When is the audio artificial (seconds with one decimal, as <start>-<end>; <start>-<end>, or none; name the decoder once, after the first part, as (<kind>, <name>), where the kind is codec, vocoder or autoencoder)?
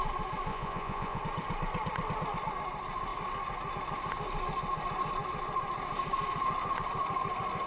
0.5-1.2 (vocoder, Vocos)